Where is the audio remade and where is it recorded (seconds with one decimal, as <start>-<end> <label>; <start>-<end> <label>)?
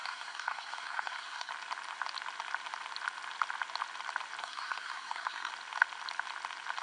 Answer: 0.0-1.5 remade; 1.5-4.4 recorded; 4.4-5.5 remade; 5.5-6.8 recorded